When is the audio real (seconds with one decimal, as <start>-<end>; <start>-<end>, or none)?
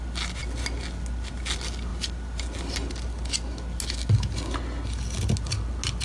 0.0-6.0